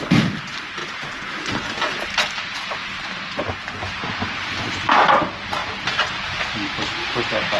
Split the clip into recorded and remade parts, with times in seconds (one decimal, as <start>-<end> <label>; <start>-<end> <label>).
0.0-0.8 recorded; 0.8-1.3 remade; 1.3-7.6 recorded